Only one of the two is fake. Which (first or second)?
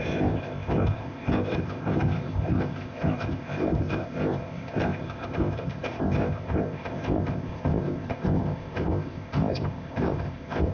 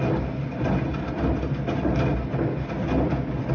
first